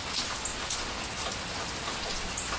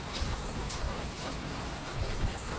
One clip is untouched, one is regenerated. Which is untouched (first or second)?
first